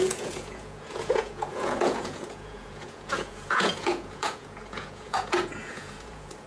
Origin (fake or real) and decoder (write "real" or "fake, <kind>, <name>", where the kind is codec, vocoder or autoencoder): fake, vocoder, Vocos